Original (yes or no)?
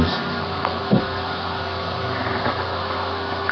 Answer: no